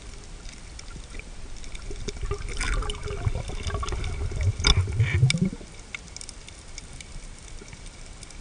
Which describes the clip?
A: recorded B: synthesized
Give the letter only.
A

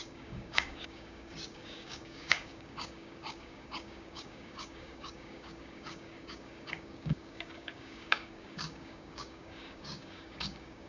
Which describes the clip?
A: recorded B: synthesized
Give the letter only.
B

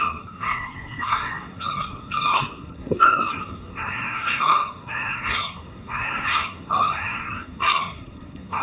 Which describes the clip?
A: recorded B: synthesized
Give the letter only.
B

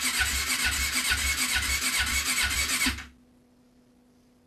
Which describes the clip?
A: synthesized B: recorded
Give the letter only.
B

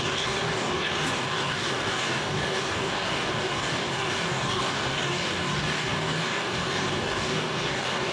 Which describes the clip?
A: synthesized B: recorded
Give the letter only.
A